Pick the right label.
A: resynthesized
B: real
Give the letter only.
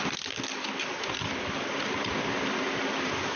B